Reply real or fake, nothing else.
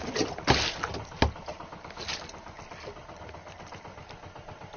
real